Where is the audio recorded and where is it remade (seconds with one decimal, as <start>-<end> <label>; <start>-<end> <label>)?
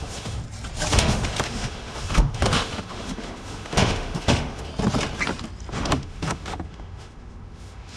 0.0-0.4 remade; 0.4-0.9 recorded; 0.9-4.7 remade; 4.7-5.7 recorded; 5.7-8.0 remade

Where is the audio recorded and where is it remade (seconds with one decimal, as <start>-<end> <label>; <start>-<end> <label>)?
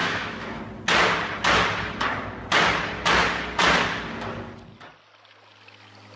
0.0-0.6 remade; 0.6-6.2 recorded